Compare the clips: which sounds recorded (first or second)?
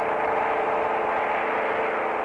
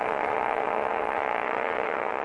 first